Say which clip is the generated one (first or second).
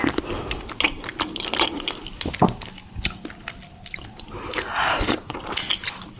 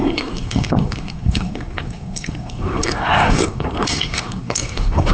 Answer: second